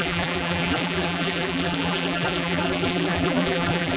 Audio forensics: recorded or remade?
remade